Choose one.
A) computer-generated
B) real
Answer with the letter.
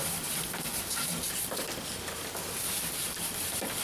B